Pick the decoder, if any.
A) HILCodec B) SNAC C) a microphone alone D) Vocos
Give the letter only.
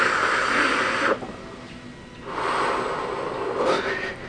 C